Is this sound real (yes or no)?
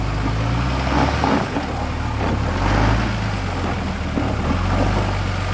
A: yes